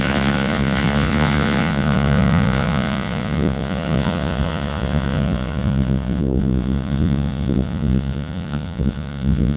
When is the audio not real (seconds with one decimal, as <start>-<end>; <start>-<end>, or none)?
0.0-9.6